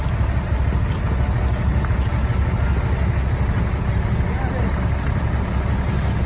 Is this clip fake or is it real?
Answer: real